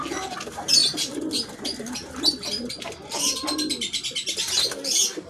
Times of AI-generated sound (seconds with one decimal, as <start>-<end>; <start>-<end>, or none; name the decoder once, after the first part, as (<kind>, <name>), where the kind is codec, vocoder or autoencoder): none